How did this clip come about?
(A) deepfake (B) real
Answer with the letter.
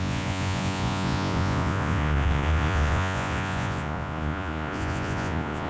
A